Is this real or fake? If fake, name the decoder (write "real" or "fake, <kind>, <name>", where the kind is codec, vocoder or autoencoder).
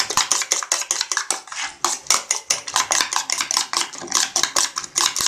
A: real